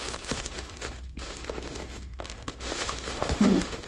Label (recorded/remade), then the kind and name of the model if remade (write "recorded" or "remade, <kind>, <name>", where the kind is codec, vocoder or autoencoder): remade, autoencoder, DAC-VAE